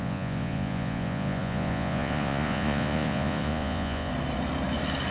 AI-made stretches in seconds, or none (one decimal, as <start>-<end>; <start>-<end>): 0.0-4.1